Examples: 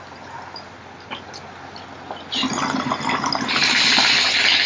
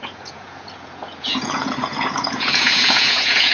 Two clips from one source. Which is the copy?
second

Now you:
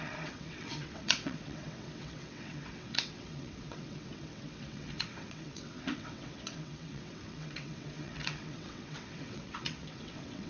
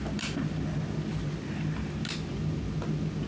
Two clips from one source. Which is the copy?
first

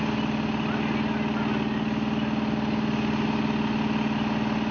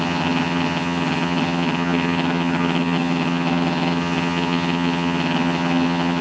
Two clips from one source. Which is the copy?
second